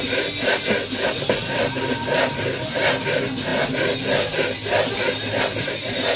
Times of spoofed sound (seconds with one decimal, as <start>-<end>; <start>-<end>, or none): none